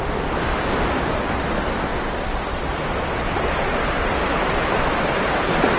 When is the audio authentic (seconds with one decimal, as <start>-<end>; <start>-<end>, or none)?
0.0-1.9